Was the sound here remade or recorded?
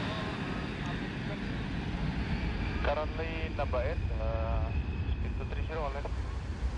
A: recorded